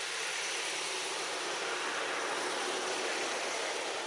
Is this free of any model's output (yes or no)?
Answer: yes